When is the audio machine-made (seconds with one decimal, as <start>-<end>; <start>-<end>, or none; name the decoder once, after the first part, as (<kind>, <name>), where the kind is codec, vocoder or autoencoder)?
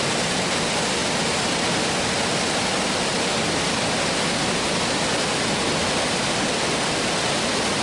none